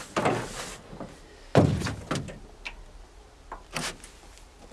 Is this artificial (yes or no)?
no